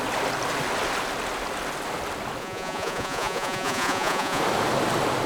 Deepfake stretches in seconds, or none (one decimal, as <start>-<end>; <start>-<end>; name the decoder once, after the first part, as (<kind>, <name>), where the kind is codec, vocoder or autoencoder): 2.4-4.4 (vocoder, Vocos)